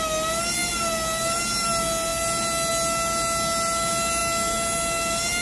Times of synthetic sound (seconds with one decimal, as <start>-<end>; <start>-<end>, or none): 0.6-1.4